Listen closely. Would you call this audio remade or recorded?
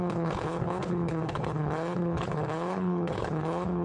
remade